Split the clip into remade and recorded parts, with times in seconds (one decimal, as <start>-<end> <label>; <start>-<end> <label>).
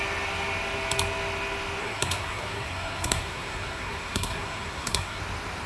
0.0-1.8 recorded; 1.8-5.2 remade; 5.2-5.7 recorded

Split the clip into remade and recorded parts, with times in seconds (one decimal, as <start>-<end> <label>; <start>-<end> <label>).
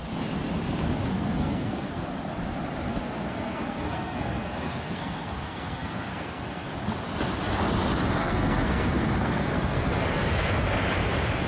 0.0-1.0 recorded; 1.0-2.1 remade; 2.1-2.9 recorded; 2.9-6.7 remade; 6.7-8.2 recorded; 8.2-10.5 remade; 10.5-11.5 recorded